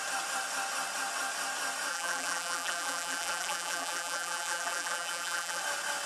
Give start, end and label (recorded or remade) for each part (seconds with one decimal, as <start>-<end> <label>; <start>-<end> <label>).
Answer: 0.0-1.9 recorded; 1.9-5.6 remade; 5.6-6.1 recorded